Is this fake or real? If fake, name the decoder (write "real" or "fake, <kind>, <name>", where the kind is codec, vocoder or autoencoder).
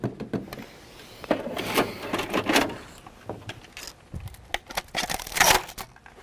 real